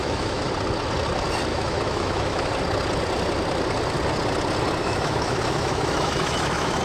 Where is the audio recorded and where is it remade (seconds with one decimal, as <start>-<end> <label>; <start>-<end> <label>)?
0.0-0.5 remade; 0.5-1.5 recorded; 1.5-2.5 remade; 2.5-4.8 recorded; 4.8-6.8 remade